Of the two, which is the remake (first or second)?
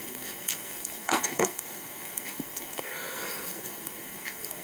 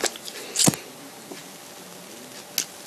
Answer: first